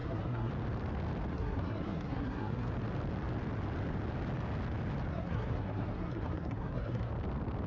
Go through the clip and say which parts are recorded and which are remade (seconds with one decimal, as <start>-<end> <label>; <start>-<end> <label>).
0.0-0.5 remade; 0.5-1.3 recorded; 1.3-2.7 remade; 2.7-5.1 recorded; 5.1-7.1 remade; 7.1-7.7 recorded